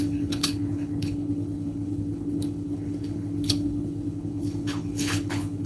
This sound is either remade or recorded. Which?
remade